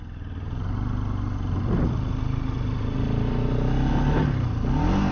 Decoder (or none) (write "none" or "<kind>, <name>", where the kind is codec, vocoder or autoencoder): none